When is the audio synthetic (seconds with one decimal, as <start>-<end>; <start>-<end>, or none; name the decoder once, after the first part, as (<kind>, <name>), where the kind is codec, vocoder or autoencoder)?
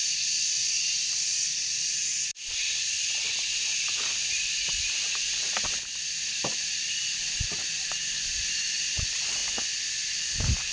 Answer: none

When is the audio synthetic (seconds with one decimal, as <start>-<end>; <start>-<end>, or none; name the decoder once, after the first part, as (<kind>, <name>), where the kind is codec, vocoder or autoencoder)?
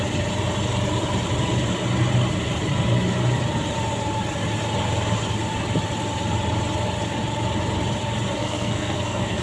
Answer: 8.4-9.4 (codec, SNAC)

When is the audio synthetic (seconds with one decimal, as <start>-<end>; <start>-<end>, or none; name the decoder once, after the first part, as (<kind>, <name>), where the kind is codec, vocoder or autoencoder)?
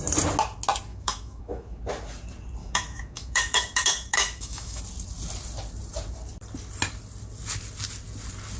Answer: 0.9-1.8 (autoencoder, DAC-VAE); 2.6-4.8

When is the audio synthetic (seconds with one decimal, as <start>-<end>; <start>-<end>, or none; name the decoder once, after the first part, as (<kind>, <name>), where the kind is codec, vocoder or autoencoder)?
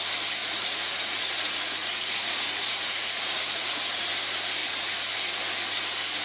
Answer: 0.4-4.1 (vocoder, Vocos); 4.6-5.1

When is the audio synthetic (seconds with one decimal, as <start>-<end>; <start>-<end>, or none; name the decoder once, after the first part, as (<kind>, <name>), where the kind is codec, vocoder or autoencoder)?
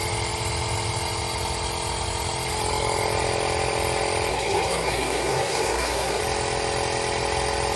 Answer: 4.3-6.2 (codec, SNAC)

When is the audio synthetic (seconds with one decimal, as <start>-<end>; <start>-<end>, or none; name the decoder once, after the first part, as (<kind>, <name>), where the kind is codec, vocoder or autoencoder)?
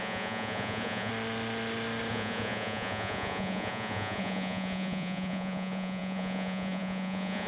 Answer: 0.0-1.1 (vocoder, Vocos); 2.1-7.5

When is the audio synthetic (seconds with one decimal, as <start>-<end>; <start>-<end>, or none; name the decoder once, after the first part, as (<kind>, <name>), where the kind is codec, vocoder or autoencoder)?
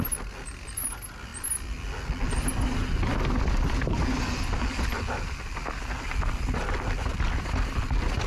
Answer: none